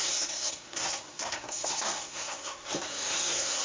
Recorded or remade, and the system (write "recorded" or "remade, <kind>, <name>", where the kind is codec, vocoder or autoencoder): remade, codec, SNAC